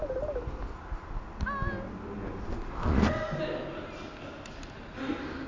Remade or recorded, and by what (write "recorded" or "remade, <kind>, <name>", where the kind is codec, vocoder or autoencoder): recorded